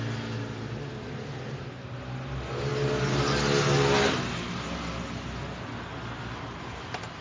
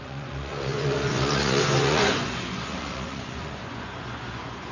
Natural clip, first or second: first